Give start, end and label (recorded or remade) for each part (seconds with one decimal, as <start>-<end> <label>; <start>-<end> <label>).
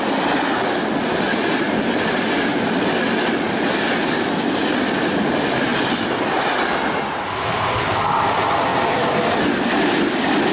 0.0-10.5 recorded